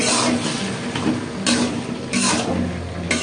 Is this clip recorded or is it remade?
recorded